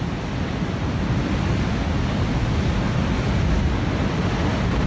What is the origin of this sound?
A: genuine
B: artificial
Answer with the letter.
A